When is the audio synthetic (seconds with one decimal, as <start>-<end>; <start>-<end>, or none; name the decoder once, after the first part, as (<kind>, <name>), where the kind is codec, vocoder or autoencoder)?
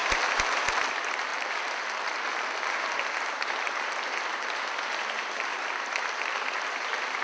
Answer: 0.0-0.8 (vocoder, BigVGAN v2); 1.3-1.8